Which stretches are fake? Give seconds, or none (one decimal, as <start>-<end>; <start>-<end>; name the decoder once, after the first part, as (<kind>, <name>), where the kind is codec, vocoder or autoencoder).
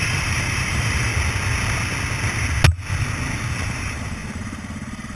0.0-1.1 (vocoder, BigVGAN v2); 3.5-5.2